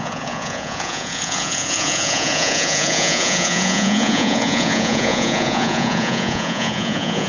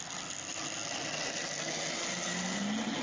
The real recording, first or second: second